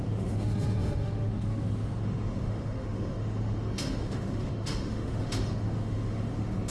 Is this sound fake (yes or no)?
yes